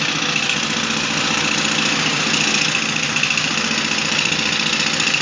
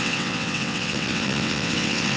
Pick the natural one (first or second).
first